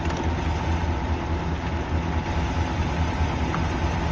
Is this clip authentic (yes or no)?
yes